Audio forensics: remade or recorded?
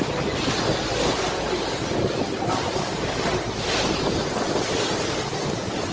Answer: recorded